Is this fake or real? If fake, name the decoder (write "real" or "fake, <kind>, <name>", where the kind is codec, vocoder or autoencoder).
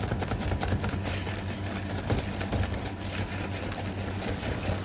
real